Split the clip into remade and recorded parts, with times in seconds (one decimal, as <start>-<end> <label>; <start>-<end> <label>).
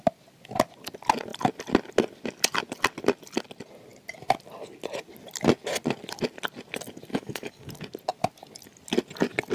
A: 0.0-7.1 recorded; 7.1-7.7 remade; 7.7-9.5 recorded